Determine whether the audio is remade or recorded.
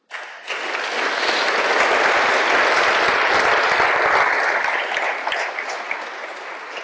recorded